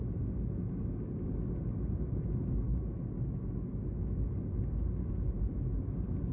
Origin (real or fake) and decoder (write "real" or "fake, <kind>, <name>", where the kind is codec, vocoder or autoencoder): real